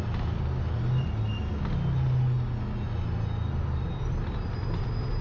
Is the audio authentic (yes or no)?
yes